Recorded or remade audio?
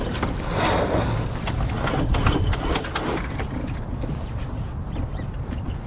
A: recorded